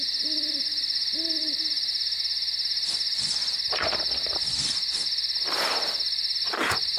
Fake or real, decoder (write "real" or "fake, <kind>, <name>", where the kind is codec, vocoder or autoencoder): real